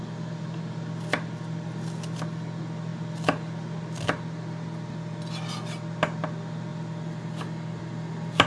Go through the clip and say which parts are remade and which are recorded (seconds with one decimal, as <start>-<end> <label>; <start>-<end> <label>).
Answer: 0.0-8.5 recorded